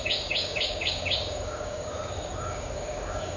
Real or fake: fake